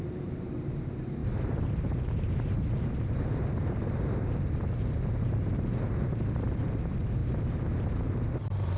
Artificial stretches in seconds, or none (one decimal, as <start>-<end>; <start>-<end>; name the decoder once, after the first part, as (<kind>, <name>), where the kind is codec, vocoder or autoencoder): 0.0-8.8 (vocoder, BigVGAN v2)